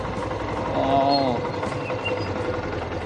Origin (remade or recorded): recorded